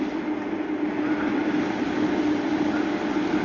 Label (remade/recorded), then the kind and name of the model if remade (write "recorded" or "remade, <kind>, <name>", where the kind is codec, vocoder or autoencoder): recorded